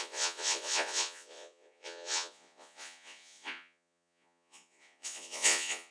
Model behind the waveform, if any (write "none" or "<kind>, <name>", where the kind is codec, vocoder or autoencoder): vocoder, Vocos